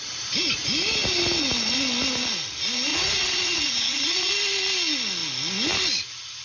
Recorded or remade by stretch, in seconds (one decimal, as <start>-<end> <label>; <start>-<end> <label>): 0.0-2.9 recorded; 2.9-4.3 remade; 4.3-6.4 recorded